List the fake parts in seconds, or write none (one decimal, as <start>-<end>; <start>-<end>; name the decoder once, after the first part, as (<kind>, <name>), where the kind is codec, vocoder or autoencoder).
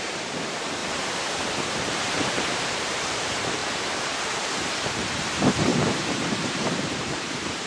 0.0-7.7 (vocoder, BigVGAN v2)